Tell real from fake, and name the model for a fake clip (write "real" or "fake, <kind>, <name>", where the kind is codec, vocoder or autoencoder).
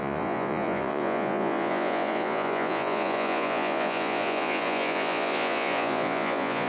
fake, vocoder, Vocos